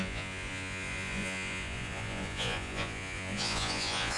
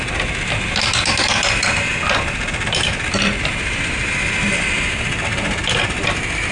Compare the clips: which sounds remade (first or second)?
first